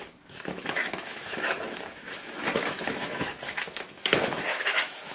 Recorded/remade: remade